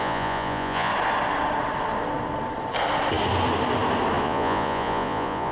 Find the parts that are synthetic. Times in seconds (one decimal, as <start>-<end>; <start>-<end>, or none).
0.0-0.9; 4.2-5.5